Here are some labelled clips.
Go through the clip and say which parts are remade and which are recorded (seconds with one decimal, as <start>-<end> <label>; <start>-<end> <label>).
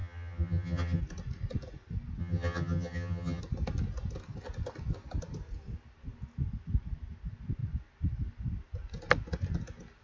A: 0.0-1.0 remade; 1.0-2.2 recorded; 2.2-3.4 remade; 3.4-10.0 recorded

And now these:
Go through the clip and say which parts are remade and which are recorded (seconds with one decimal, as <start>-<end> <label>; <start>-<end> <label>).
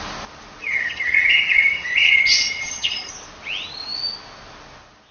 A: 0.0-0.6 recorded; 0.6-3.1 remade; 3.1-5.1 recorded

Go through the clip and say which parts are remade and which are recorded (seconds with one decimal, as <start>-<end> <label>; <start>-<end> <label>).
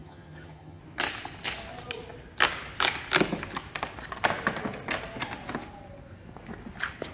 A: 0.0-0.8 remade; 0.8-7.1 recorded